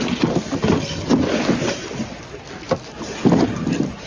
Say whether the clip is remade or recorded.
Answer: recorded